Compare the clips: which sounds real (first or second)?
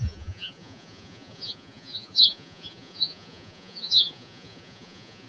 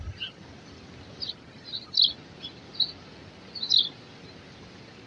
second